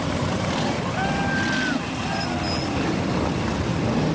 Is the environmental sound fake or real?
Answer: real